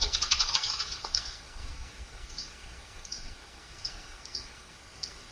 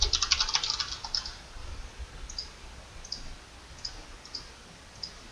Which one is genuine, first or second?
second